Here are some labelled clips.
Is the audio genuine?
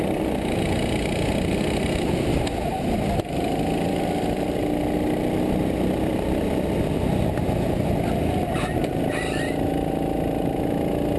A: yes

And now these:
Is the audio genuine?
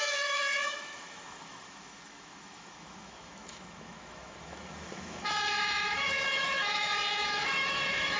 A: no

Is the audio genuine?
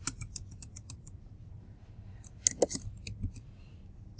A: yes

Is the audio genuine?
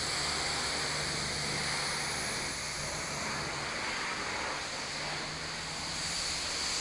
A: yes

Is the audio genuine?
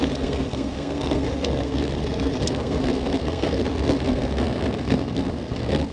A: no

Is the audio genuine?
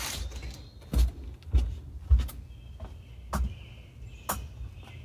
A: yes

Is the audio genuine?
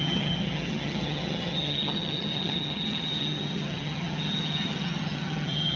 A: no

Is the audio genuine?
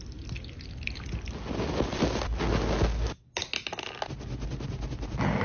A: yes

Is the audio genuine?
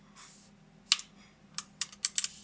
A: yes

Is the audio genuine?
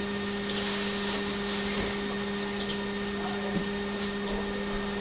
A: yes